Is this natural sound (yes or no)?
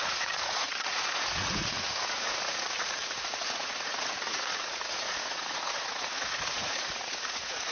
no